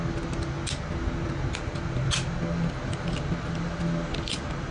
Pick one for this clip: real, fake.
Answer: real